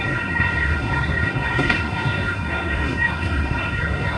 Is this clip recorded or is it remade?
remade